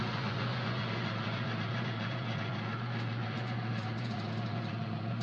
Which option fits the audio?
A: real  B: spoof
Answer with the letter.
B